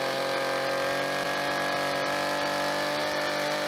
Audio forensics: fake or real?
real